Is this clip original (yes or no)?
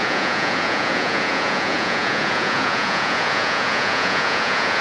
no